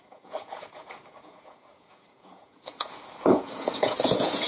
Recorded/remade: remade